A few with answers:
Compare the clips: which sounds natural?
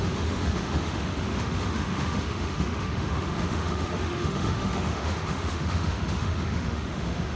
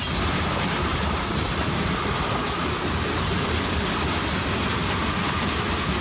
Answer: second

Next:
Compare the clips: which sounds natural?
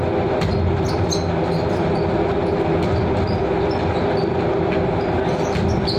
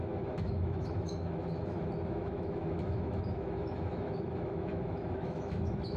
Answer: first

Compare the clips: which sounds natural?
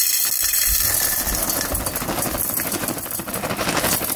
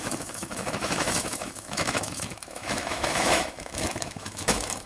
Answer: first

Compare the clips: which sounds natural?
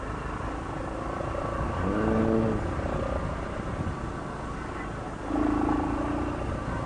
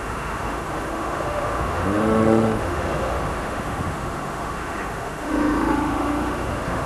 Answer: first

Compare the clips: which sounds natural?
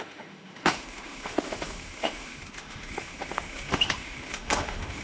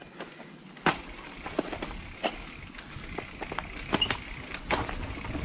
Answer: second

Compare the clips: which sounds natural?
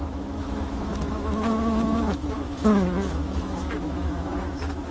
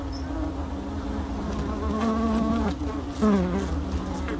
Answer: second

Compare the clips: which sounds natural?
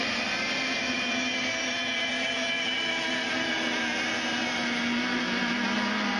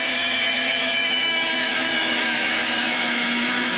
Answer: first